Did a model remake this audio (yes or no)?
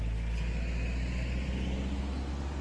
no